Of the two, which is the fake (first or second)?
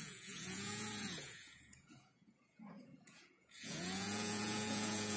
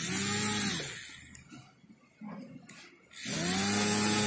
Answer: first